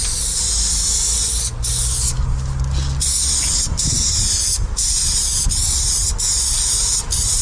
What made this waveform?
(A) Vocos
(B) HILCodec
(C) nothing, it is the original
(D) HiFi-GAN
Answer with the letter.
C